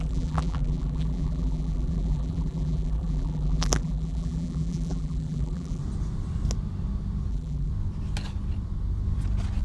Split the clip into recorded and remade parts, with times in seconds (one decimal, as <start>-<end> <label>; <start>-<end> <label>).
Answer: 0.0-5.8 remade; 5.8-7.3 recorded; 7.3-7.7 remade; 7.7-9.6 recorded